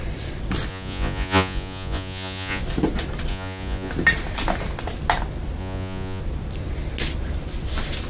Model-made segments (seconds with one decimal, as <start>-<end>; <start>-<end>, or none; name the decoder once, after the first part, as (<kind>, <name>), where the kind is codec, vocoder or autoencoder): 0.7-2.6 (vocoder, Vocos); 3.3-3.9; 5.6-6.2

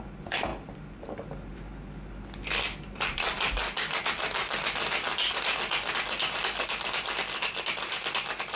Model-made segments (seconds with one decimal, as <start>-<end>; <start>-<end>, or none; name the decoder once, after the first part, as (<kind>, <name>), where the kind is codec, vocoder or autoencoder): none

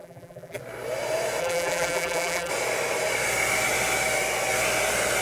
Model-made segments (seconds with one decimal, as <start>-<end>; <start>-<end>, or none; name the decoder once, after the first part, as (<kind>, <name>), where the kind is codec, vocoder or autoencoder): 0.0-0.6 (vocoder, BigVGAN v2); 1.4-2.5

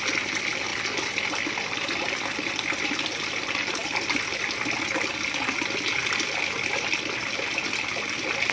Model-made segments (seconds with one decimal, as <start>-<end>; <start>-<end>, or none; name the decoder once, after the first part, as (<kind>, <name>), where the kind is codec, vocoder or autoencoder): none

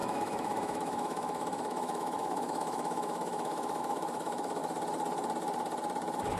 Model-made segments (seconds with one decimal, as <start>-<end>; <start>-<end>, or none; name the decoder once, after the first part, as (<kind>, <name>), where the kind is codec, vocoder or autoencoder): 0.0-4.6 (autoencoder, DAC-VAE)